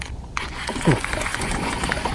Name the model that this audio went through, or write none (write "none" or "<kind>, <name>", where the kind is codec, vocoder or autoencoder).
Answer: vocoder, Vocos